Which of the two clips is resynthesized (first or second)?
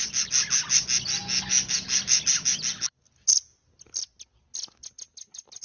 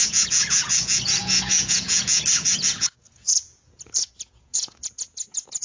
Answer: second